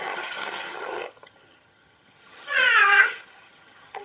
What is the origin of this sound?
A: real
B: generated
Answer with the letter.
B